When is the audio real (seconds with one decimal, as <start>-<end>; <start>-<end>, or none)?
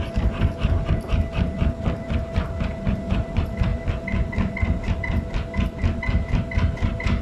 0.0-7.2